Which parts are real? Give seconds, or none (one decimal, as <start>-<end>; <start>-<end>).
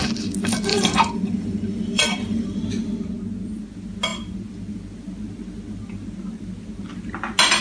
0.0-0.7; 2.6-7.6